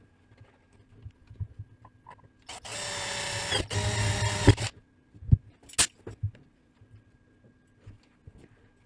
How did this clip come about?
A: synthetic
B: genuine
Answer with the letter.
B